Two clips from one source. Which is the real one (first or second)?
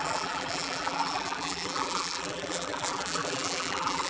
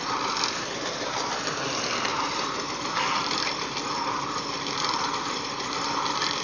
second